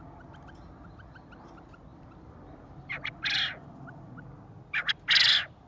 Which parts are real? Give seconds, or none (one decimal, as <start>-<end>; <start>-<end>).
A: 0.0-1.9; 3.1-5.7